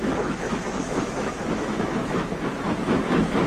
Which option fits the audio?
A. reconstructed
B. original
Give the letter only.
A